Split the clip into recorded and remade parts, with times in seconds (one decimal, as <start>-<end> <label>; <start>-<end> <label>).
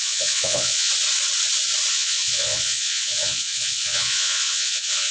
0.0-0.9 remade; 0.9-1.9 recorded; 1.9-5.1 remade